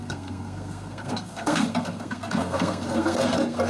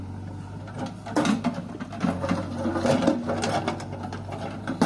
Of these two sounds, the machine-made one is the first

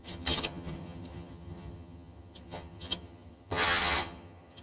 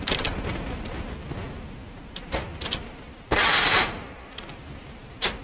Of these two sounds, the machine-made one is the first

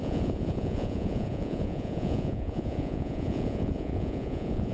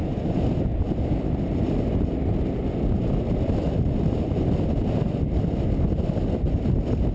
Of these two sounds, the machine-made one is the first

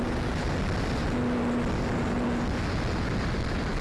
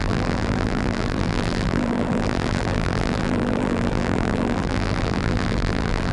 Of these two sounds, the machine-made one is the second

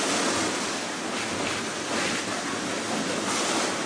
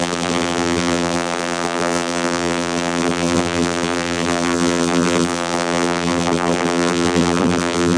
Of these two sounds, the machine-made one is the second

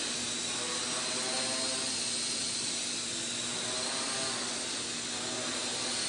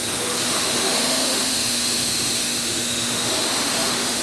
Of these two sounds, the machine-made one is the second